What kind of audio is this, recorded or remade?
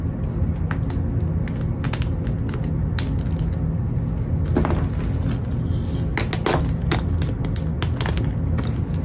recorded